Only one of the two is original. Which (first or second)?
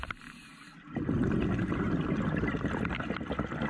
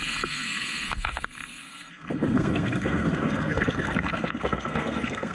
first